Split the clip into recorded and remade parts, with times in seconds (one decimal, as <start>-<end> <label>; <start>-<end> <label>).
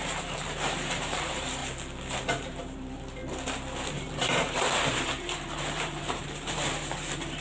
0.0-1.6 remade; 1.6-2.2 recorded; 2.2-3.2 remade; 3.2-3.9 recorded; 3.9-7.4 remade